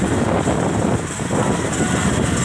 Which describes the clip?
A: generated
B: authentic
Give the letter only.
B